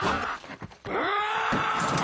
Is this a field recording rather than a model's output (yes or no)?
no